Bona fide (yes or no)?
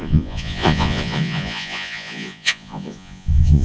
no